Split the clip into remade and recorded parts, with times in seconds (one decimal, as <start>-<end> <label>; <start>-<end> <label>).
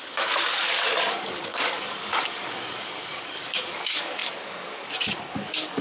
0.0-5.8 remade